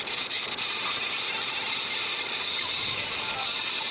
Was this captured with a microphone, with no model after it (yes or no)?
yes